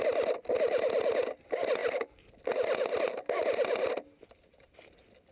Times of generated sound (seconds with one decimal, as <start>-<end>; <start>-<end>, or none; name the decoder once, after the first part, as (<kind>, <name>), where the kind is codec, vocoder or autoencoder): none